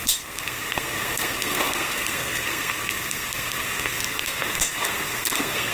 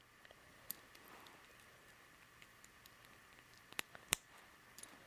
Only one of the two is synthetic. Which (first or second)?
first